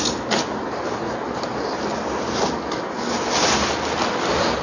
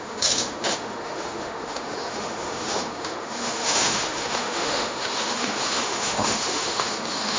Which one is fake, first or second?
second